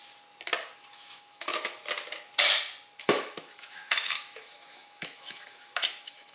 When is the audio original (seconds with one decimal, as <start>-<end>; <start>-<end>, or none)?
0.0-0.9; 1.5-3.0